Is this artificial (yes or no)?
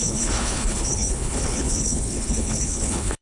yes